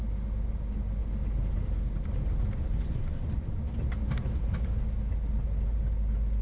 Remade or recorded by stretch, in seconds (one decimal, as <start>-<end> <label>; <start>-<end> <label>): 0.0-6.4 recorded